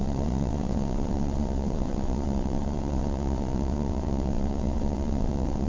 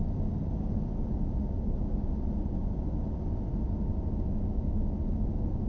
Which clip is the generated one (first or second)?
first